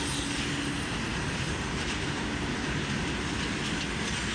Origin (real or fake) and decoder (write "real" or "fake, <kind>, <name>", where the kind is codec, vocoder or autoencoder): real